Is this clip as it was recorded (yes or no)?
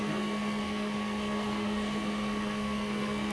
no